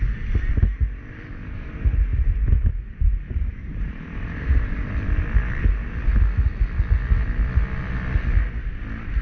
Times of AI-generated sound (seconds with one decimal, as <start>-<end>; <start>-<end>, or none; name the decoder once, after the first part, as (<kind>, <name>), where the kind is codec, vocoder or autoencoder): 2.1-2.8 (vocoder, BigVGAN v2); 3.5-4.9

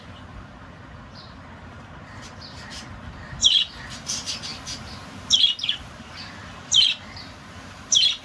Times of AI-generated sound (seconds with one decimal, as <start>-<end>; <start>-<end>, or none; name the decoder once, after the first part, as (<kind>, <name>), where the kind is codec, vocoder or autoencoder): none

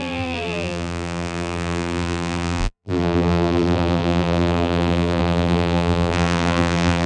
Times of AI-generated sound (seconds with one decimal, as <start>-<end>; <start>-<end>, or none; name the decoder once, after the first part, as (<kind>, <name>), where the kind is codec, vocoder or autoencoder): 0.0-7.1 (vocoder, BigVGAN v2)

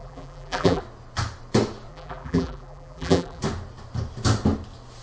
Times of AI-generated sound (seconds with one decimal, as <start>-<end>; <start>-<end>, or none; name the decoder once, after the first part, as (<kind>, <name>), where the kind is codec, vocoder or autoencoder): 0.0-0.8 (vocoder, BigVGAN v2); 1.9-3.4

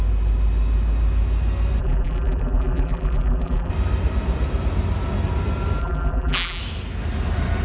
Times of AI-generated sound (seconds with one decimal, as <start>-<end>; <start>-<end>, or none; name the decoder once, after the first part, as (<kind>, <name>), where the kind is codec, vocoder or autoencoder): 1.8-3.7 (vocoder, BigVGAN v2); 5.8-6.6

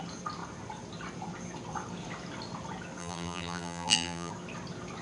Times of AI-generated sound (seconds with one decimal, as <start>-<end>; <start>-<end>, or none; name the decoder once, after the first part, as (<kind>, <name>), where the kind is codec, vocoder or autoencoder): 3.0-4.3 (vocoder, BigVGAN v2)